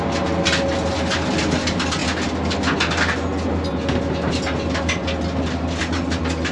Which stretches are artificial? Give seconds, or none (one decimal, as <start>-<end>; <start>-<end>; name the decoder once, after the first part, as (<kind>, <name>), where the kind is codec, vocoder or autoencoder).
none